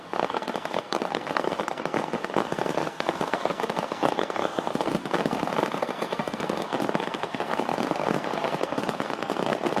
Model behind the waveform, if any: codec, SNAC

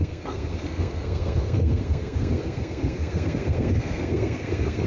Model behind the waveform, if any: codec, SNAC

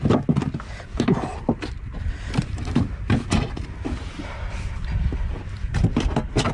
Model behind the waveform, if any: none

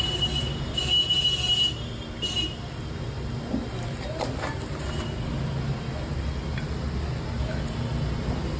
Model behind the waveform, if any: none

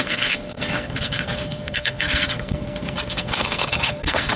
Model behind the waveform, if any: codec, SNAC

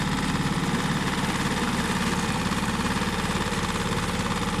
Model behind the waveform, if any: none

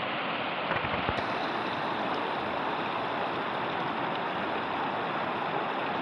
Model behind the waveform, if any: none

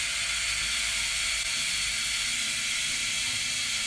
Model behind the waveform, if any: none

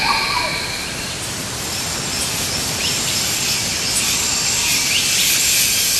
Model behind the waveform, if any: none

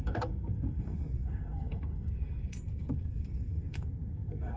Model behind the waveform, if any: codec, SNAC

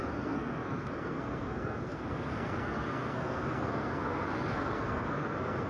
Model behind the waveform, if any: codec, SNAC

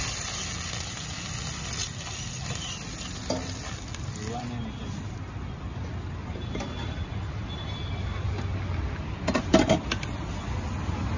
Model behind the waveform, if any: none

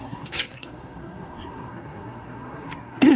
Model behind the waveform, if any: codec, SNAC